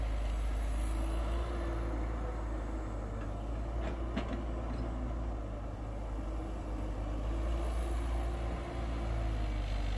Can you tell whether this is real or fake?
real